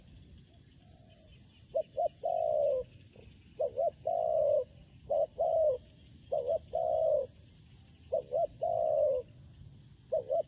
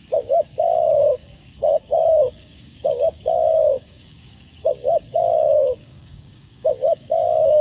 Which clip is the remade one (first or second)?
second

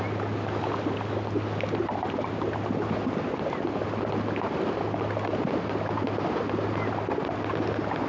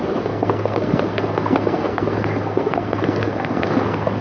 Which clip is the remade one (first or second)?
second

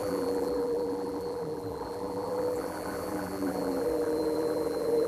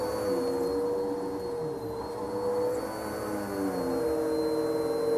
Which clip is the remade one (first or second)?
first